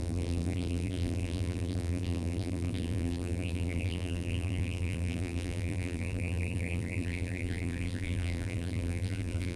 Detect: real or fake fake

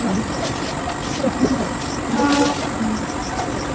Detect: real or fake fake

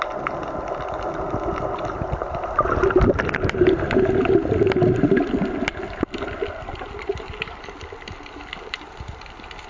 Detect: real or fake real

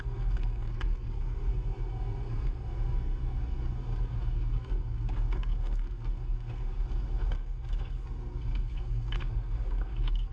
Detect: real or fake fake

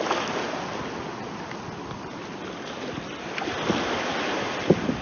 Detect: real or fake real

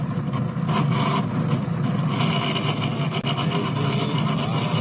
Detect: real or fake real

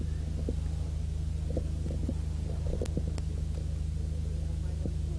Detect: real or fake real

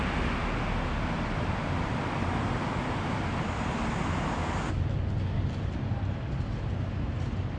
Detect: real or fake real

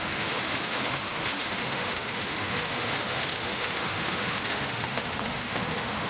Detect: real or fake fake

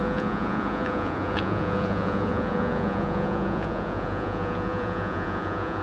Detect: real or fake fake